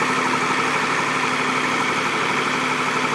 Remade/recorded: recorded